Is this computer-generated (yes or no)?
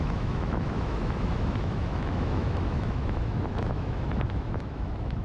yes